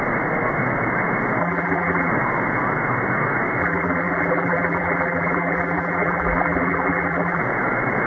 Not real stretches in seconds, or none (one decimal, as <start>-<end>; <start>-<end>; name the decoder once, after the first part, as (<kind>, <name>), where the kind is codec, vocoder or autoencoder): 1.4-2.1 (vocoder, BigVGAN v2); 3.6-7.4

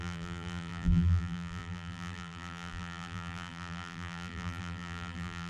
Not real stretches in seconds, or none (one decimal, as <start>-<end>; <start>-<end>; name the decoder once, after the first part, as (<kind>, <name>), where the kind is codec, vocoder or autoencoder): 0.0-5.5 (vocoder, BigVGAN v2)